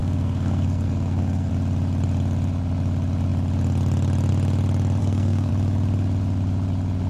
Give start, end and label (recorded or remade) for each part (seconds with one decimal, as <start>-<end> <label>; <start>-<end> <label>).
0.0-1.5 remade; 1.5-5.0 recorded; 5.0-5.5 remade; 5.5-7.1 recorded